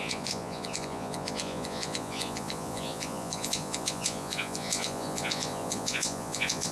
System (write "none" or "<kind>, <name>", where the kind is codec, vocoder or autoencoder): vocoder, Vocos